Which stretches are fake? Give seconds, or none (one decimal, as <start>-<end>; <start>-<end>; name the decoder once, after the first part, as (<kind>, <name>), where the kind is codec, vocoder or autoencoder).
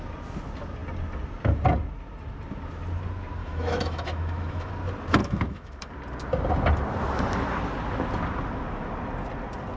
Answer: 3.4-4.7 (autoencoder, DAC-VAE); 5.2-5.9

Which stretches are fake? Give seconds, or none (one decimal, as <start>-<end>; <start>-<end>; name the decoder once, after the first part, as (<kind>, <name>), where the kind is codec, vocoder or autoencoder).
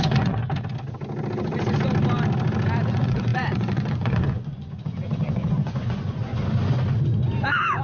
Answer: 0.0-0.4 (vocoder, Vocos); 2.9-6.3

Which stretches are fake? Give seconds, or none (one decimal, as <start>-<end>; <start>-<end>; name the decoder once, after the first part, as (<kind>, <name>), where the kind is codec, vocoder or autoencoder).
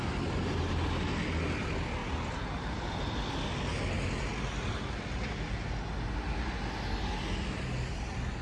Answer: none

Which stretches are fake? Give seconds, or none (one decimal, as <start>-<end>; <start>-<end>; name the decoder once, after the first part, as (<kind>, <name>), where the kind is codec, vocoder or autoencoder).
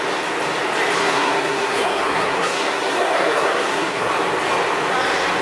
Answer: 1.0-4.1 (codec, SNAC)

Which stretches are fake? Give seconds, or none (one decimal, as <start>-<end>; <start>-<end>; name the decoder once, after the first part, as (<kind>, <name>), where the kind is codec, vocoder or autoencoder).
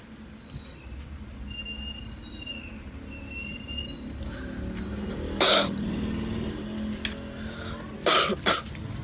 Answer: none